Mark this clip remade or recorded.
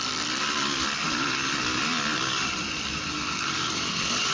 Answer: recorded